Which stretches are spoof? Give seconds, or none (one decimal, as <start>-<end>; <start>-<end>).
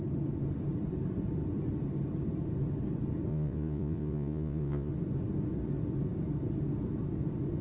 3.3-4.9